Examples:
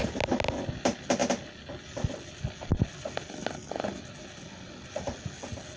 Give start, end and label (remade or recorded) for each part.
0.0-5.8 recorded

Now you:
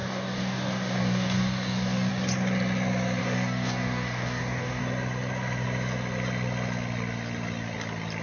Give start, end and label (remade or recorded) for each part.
0.0-2.1 remade; 2.1-3.2 recorded; 3.2-4.8 remade; 4.8-8.2 recorded

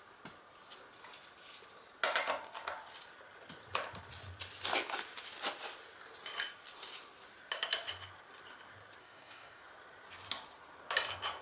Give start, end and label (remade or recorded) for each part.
0.0-9.0 recorded; 9.0-9.6 remade; 9.6-11.4 recorded

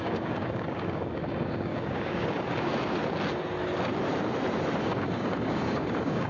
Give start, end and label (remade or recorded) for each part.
0.0-2.7 remade; 2.7-4.8 recorded; 4.8-6.3 remade

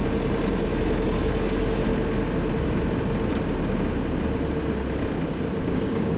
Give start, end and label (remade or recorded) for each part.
0.0-1.2 recorded; 1.2-1.9 remade; 1.9-5.6 recorded; 5.6-6.2 remade